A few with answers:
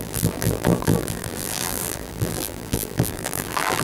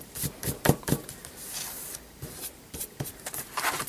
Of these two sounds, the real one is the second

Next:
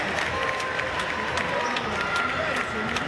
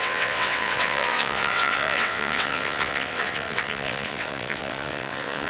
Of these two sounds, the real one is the first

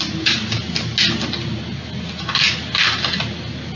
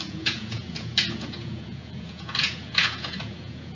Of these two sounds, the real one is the first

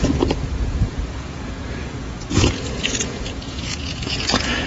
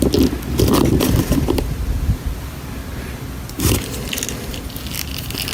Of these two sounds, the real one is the second